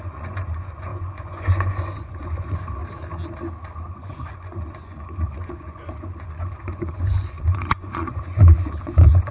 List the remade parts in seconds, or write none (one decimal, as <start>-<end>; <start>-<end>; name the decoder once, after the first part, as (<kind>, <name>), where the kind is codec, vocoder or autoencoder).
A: 0.0-2.8 (vocoder, Vocos); 3.9-9.3